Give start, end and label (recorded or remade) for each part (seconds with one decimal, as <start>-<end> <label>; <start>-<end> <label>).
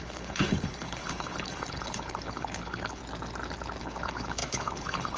0.0-3.0 remade; 3.0-3.8 recorded; 3.8-5.2 remade